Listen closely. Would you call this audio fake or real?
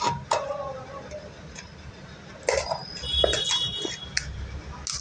real